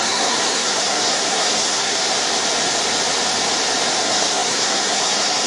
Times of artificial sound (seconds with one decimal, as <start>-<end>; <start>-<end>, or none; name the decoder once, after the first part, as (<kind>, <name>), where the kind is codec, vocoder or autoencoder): 0.0-2.0 (codec, SNAC); 4.0-5.5